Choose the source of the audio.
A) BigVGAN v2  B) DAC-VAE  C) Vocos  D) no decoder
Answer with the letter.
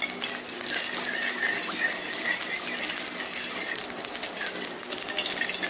D